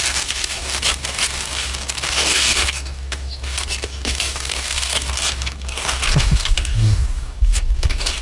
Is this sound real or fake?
fake